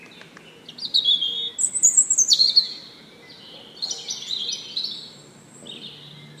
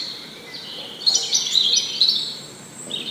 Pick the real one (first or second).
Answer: first